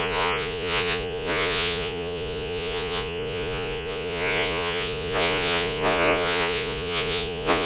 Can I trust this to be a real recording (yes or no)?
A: no